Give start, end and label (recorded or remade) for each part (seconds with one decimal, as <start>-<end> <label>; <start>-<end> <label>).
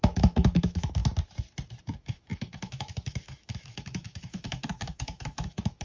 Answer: 0.0-1.0 remade; 1.0-1.8 recorded; 1.8-5.8 remade